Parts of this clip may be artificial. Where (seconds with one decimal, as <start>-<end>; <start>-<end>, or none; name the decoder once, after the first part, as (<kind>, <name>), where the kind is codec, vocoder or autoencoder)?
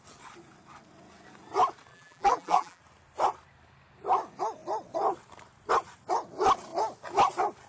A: 1.9-2.8 (vocoder, BigVGAN v2)